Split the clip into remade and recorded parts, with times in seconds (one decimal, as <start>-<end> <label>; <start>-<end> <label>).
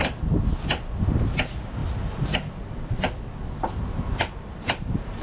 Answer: 0.0-4.1 recorded; 4.1-5.2 remade